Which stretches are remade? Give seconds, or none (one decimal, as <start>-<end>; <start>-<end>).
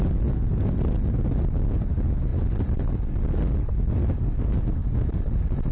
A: 4.8-5.7